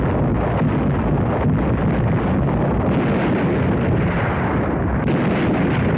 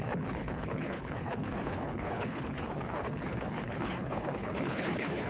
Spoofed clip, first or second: second